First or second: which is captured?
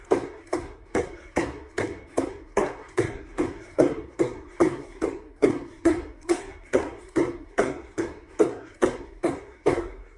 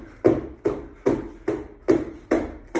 second